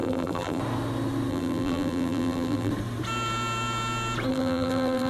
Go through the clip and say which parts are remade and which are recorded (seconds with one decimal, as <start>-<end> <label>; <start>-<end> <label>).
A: 0.0-0.6 remade; 0.6-1.3 recorded; 1.3-2.7 remade; 2.7-4.3 recorded; 4.3-5.1 remade